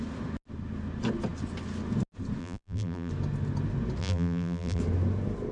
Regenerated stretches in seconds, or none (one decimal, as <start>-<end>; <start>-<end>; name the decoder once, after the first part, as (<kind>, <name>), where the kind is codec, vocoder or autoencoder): 2.4-3.1 (vocoder, BigVGAN v2); 4.0-4.8

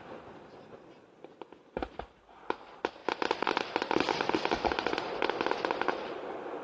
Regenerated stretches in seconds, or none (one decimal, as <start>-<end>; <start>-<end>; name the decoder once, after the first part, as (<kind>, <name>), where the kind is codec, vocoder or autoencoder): 3.0-5.2 (vocoder, BigVGAN v2)

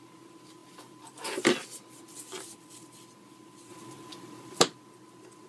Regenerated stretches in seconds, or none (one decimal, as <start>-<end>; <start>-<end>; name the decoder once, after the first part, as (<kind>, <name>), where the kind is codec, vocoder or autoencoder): 3.7-4.6 (vocoder, BigVGAN v2)

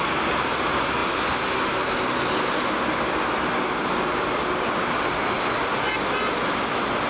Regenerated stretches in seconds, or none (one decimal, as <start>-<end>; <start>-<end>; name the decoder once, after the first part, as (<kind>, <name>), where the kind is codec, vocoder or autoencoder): none